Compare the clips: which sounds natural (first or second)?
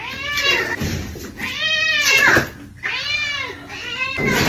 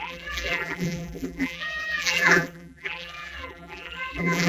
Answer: first